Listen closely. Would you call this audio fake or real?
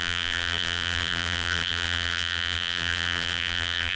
fake